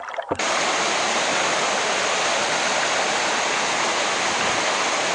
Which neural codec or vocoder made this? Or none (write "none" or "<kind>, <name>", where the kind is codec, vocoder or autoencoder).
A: none